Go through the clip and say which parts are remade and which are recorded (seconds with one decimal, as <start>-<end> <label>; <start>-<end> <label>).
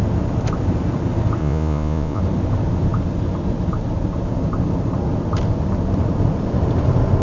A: 0.0-1.4 recorded; 1.4-2.2 remade; 2.2-7.2 recorded